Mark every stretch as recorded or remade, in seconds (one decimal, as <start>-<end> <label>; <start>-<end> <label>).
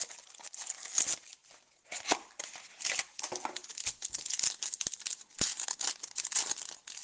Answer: 0.0-7.0 recorded